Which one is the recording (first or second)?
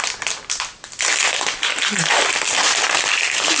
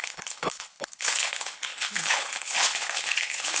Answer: first